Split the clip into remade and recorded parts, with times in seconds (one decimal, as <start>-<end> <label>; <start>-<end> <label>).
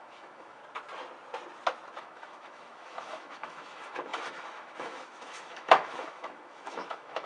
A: 0.0-0.6 remade; 0.6-2.0 recorded; 2.0-7.3 remade